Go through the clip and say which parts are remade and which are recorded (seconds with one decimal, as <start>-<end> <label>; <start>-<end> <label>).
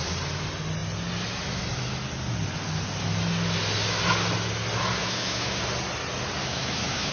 0.0-5.0 recorded; 5.0-5.6 remade; 5.6-6.4 recorded; 6.4-7.1 remade